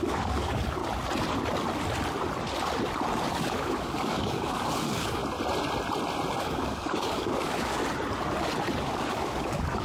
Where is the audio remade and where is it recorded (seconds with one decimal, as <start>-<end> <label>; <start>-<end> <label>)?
0.0-0.8 remade; 0.8-3.5 recorded; 3.5-5.2 remade; 5.2-6.4 recorded; 6.4-7.8 remade; 7.8-8.8 recorded; 8.8-9.8 remade